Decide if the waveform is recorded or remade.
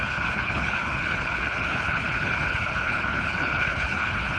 remade